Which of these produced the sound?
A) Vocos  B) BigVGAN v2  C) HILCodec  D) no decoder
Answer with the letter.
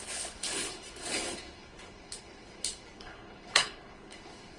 C